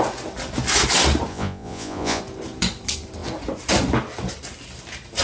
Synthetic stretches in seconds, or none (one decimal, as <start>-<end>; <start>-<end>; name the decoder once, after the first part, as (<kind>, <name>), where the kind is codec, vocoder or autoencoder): 1.3-2.2 (vocoder, Vocos)

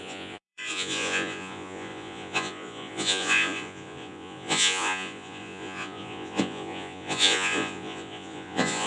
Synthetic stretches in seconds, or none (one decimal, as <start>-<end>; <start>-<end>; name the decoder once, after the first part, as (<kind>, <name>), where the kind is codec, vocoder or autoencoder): 0.0-8.9 (vocoder, Vocos)

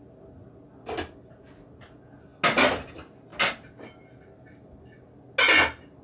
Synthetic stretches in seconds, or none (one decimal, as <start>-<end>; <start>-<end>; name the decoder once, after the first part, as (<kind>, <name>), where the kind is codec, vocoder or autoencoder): none

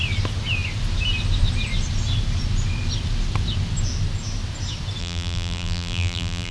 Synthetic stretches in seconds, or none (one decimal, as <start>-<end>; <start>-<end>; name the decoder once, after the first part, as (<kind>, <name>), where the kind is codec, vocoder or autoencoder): 5.0-6.5 (vocoder, BigVGAN v2)